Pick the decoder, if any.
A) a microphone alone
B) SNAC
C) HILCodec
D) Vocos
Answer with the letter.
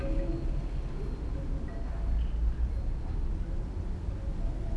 A